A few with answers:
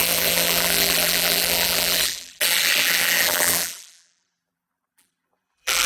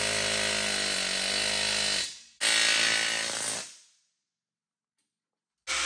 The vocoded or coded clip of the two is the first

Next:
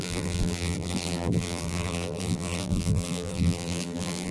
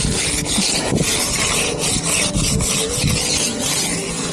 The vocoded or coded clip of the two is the first